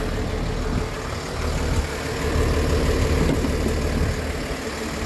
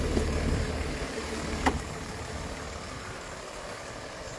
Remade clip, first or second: second